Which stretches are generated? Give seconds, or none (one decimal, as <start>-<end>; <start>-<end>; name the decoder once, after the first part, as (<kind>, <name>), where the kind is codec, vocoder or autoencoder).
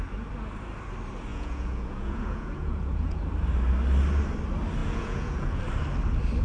1.3-3.2 (vocoder, Vocos); 4.8-5.6